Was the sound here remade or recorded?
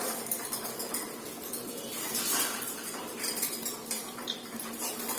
recorded